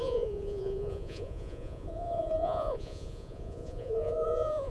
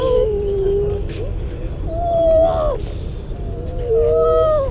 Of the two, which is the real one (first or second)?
second